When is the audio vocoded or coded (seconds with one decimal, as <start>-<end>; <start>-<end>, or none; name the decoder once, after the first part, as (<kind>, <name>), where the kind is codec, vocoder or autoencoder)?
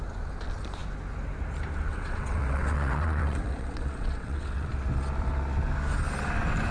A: 1.9-4.7 (vocoder, WaveNeXt)